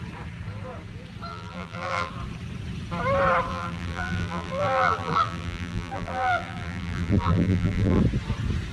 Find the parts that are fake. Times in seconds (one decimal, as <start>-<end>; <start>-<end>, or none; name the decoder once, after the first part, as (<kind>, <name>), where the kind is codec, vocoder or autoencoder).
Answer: 1.3-2.1 (vocoder, BigVGAN v2); 3.5-8.0